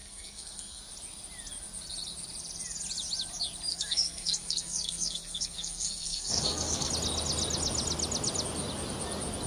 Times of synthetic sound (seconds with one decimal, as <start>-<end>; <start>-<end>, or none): 0.0-0.8; 3.7-6.9